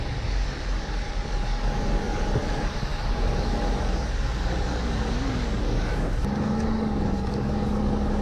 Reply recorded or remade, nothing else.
remade